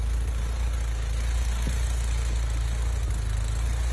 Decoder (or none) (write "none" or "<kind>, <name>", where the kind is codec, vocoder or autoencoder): none